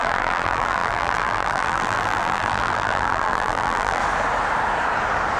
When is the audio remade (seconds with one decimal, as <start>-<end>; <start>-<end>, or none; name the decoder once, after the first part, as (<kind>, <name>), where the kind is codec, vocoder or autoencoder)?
0.0-4.0 (vocoder, BigVGAN v2)